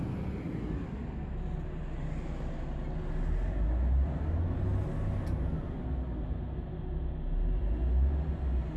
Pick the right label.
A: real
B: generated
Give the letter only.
A